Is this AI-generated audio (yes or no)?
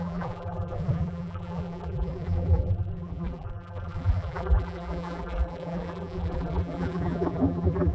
yes